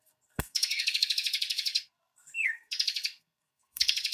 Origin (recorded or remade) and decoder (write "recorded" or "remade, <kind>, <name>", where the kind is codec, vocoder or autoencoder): remade, codec, SNAC